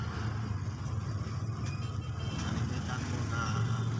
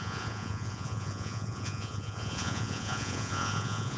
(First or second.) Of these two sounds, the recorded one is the first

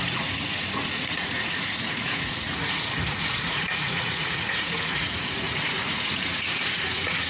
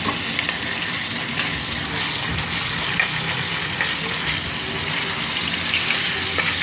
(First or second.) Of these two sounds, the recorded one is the second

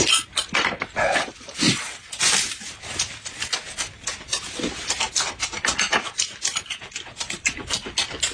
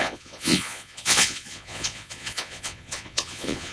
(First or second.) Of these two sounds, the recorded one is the first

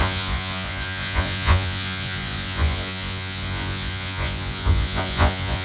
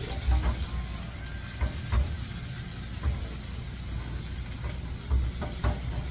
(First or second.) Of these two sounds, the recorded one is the second